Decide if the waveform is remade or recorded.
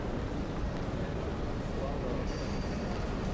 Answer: recorded